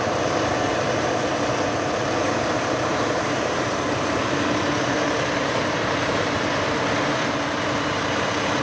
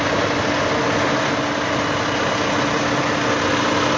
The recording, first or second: second